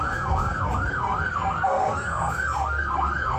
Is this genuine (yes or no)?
no